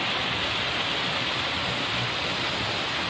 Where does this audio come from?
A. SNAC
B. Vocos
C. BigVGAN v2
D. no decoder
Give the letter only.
D